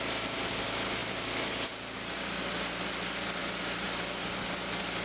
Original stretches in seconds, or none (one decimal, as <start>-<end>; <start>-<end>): 0.0-5.0

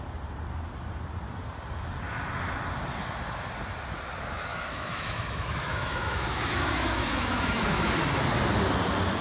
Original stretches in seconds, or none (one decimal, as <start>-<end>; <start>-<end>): 0.0-4.5; 7.9-9.2